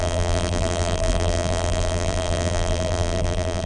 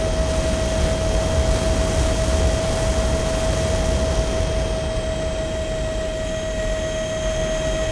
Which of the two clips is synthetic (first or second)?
first